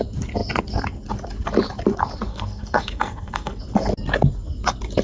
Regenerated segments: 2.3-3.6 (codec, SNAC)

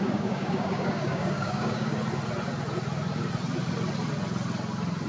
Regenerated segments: 0.0-1.9 (codec, DAC)

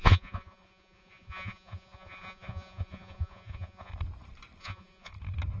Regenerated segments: 0.0-3.9 (vocoder, Vocos); 4.6-5.1